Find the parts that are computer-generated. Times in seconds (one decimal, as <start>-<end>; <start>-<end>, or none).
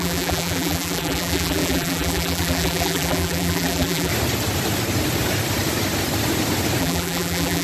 0.0-4.1; 6.8-7.6